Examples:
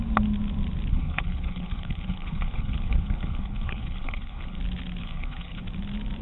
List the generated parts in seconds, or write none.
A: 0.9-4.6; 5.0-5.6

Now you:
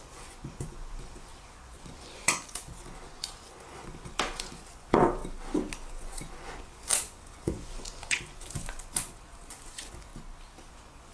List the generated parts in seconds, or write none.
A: 0.0-5.2; 5.9-10.1; 10.7-11.1

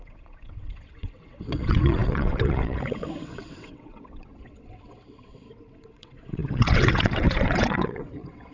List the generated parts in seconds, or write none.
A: 0.0-8.5

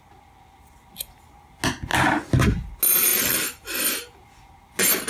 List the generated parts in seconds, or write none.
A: 1.9-2.7; 3.1-4.5

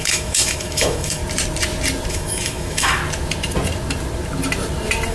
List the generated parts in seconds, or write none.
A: 0.0-1.2; 2.1-3.0